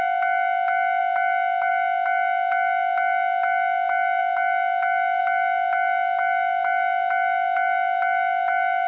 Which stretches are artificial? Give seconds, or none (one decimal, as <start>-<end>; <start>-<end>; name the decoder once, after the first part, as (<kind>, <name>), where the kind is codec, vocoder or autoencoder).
none

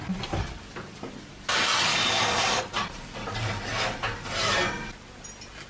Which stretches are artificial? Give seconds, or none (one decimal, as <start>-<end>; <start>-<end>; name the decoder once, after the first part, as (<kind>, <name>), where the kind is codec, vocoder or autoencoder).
1.9-2.6 (codec, DAC)